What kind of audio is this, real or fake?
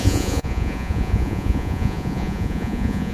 fake